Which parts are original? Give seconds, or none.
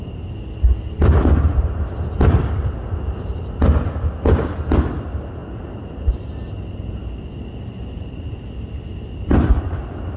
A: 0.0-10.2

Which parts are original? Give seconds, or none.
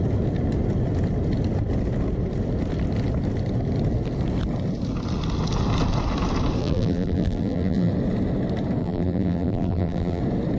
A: 0.0-6.6; 7.9-8.8; 10.2-10.6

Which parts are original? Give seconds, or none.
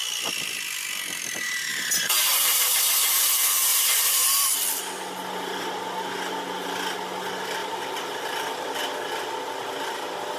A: 0.0-1.7; 2.9-3.7; 4.2-7.6; 8.8-10.4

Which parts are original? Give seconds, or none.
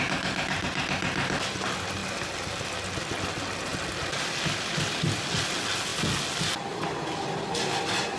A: 0.0-2.0; 2.8-8.2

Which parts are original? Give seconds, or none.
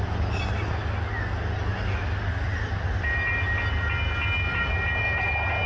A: 0.0-4.5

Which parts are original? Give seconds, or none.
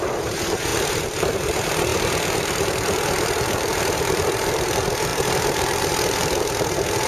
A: none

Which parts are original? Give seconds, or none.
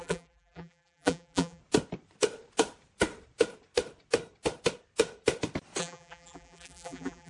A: 1.6-5.8